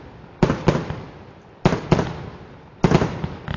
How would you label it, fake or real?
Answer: real